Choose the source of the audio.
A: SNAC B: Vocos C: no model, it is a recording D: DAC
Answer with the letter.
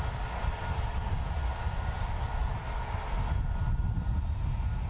C